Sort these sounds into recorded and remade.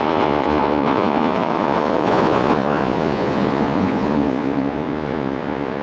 remade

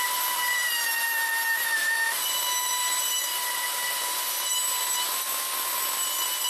recorded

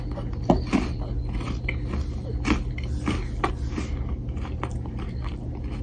recorded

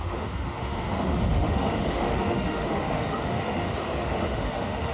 remade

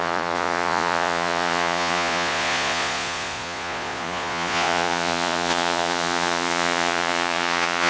remade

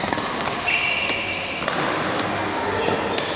recorded